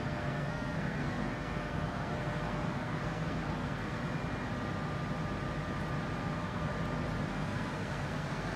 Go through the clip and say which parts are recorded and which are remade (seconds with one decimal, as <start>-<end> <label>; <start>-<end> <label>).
0.0-4.0 remade; 4.0-6.2 recorded; 6.2-6.7 remade; 6.7-7.3 recorded; 7.3-8.6 remade